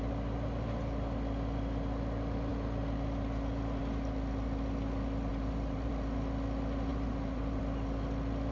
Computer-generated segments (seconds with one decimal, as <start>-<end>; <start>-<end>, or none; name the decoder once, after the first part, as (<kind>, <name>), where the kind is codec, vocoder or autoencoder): 5.3-5.9 (vocoder, BigVGAN v2); 6.9-7.6